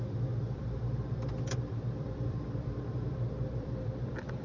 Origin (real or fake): fake